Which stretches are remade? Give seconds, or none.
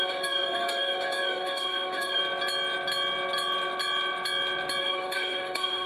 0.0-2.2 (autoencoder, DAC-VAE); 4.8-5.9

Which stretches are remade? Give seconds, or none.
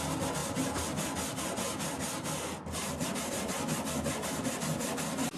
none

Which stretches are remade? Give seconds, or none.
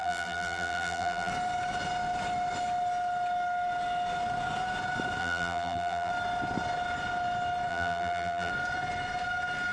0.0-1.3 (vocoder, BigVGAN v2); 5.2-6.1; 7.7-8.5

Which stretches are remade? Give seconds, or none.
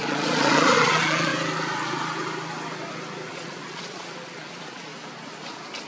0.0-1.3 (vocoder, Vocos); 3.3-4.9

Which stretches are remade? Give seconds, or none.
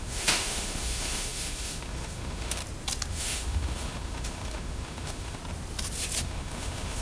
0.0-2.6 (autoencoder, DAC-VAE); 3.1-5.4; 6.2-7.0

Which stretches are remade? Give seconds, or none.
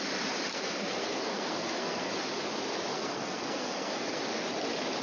0.5-2.1 (codec, SNAC); 2.9-4.2